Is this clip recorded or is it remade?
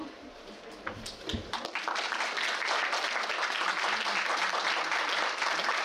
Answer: recorded